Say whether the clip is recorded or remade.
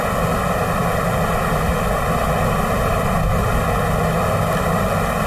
recorded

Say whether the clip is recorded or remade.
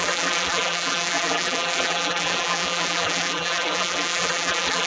remade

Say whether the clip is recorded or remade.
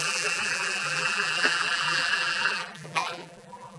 remade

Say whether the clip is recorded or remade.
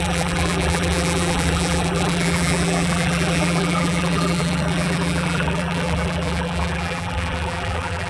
remade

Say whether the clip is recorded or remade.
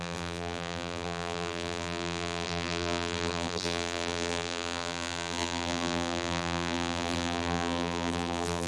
remade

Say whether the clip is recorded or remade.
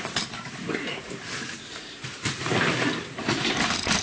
remade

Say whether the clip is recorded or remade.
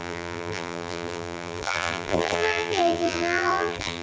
remade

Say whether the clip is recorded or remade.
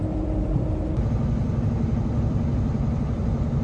remade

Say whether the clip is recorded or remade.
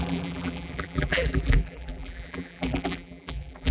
remade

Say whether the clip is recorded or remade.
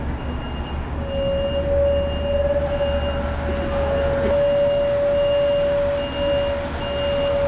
recorded